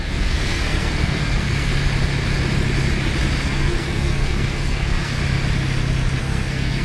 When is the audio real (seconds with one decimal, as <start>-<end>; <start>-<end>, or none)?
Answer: 1.7-3.4; 5.2-6.2